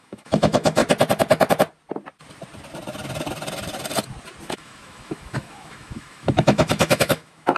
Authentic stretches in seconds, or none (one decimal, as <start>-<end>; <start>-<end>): 0.8-4.5